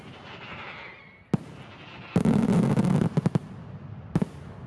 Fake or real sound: real